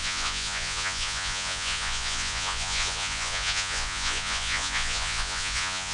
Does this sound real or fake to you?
fake